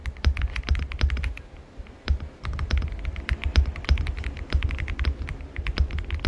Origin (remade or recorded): recorded